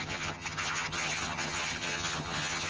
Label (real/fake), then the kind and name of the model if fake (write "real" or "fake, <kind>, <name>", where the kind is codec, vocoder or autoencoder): fake, vocoder, HiFi-GAN